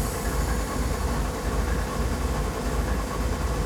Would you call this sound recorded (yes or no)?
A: yes